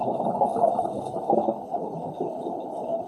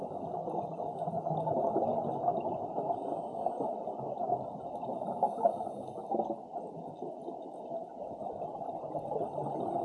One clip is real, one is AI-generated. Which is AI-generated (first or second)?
first